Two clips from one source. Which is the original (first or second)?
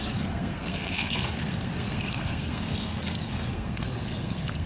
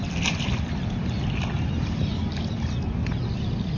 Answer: second